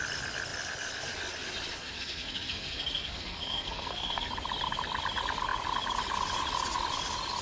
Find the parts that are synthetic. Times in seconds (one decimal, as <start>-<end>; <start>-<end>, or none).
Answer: 1.8-4.3